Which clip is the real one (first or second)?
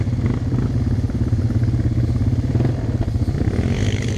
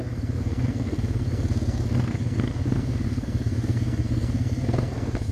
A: first